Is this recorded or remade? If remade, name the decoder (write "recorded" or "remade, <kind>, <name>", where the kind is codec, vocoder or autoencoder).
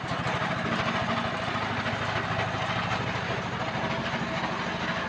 recorded